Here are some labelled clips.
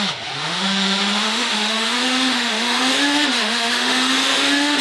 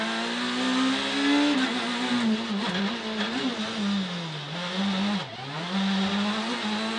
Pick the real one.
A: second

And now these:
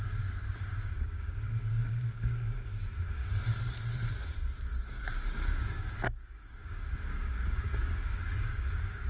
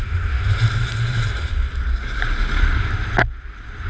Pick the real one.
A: second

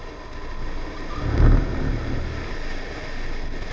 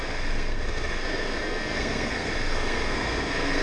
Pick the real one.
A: first